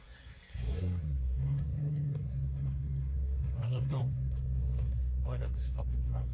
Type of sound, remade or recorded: remade